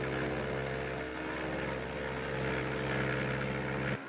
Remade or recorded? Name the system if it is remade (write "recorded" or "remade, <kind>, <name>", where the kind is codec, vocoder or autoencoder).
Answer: recorded